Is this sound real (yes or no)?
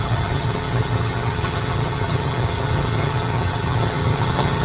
no